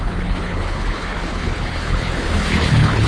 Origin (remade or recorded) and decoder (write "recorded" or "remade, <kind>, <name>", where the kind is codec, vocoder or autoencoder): remade, codec, HILCodec